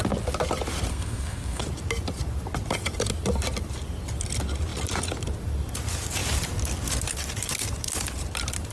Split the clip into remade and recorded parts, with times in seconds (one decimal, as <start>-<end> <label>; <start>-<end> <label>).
0.0-0.9 recorded; 0.9-1.6 remade; 1.6-8.7 recorded

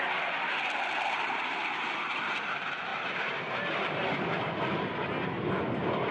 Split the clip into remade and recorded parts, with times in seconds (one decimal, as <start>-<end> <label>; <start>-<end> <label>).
0.0-6.1 recorded

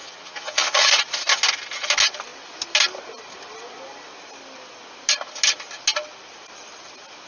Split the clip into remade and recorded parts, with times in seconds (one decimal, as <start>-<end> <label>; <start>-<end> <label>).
0.0-0.9 remade; 0.9-7.3 recorded

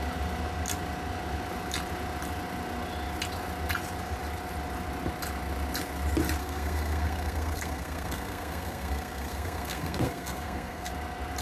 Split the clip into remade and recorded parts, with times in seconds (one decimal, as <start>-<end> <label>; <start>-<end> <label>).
0.0-6.4 recorded; 6.4-10.9 remade; 10.9-11.4 recorded

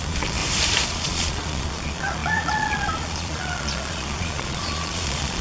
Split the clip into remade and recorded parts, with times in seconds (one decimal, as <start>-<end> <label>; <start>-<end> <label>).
0.0-0.4 remade; 0.4-0.9 recorded; 0.9-5.4 remade

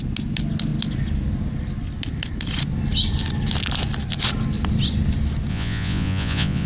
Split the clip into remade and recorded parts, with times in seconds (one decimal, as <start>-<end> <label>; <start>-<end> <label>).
0.0-5.5 recorded; 5.5-6.7 remade